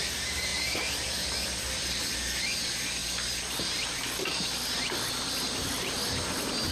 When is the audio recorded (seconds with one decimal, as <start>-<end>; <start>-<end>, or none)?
0.0-0.5; 2.4-6.7